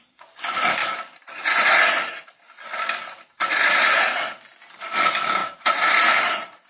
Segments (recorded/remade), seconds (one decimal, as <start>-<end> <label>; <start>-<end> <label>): 0.0-5.4 recorded; 5.4-6.3 remade; 6.3-6.7 recorded